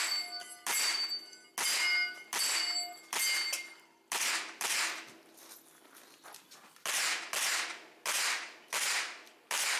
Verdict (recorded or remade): recorded